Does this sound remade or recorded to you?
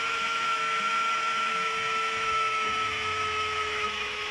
remade